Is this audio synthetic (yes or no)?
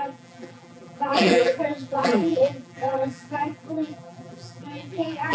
yes